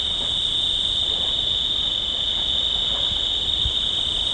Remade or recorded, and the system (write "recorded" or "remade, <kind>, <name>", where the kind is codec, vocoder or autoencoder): recorded